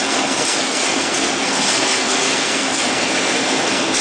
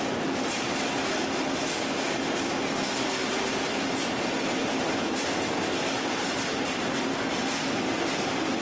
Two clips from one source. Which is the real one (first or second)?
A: second